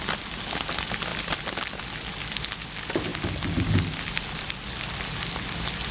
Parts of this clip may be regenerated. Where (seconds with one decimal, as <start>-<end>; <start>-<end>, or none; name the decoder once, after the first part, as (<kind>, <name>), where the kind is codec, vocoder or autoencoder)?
none